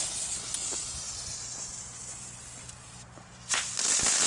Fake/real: real